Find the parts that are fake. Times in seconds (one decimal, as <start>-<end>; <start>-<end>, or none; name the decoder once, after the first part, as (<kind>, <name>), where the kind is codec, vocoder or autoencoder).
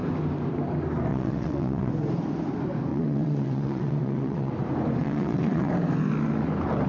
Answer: 1.1-1.9 (vocoder, WaveNeXt); 2.9-4.5; 5.0-5.7